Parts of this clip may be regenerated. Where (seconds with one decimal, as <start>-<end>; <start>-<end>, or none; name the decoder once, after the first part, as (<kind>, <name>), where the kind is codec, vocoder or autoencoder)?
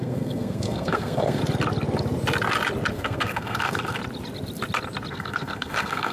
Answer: 0.0-1.4 (codec, SNAC); 2.9-4.0; 5.1-6.1